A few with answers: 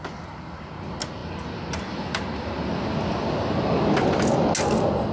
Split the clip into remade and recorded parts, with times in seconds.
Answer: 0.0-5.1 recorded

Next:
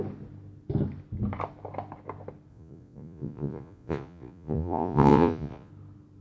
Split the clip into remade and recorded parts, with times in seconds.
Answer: 0.0-2.5 recorded; 2.5-5.7 remade; 5.7-6.2 recorded

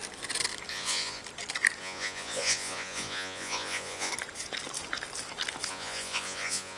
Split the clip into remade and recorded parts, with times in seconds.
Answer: 0.0-0.7 recorded; 0.7-1.2 remade; 1.2-1.8 recorded; 1.8-4.1 remade; 4.1-5.7 recorded; 5.7-6.8 remade

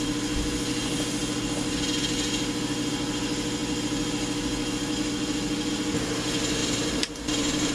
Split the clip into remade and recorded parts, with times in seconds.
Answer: 0.0-6.6 recorded; 6.6-7.7 remade

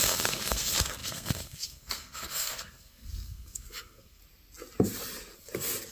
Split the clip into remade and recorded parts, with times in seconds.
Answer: 0.0-4.2 remade; 4.2-5.9 recorded

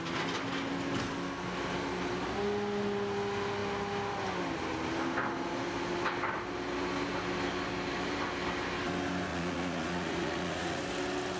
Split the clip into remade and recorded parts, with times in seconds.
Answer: 0.0-9.3 recorded; 9.3-10.8 remade; 10.8-11.4 recorded

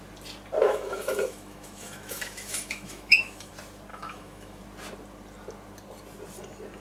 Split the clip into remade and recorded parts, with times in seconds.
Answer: 0.0-0.6 recorded; 0.6-3.5 remade; 3.5-3.9 recorded; 3.9-4.6 remade; 4.6-6.8 recorded